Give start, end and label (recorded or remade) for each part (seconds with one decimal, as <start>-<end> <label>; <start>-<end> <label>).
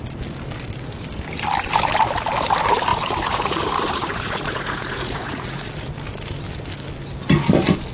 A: 0.0-2.9 recorded; 2.9-5.7 remade; 5.7-7.9 recorded